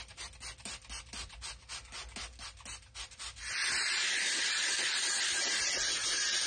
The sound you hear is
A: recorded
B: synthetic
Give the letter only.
A